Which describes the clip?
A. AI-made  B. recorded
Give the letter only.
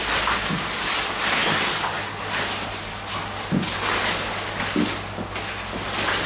B